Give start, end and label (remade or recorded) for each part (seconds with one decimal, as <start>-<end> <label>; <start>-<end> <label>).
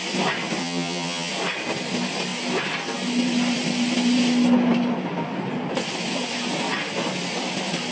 0.0-0.6 recorded; 0.6-1.3 remade; 1.3-7.9 recorded